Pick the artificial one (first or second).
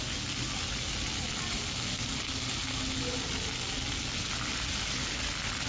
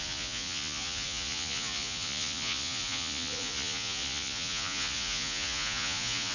second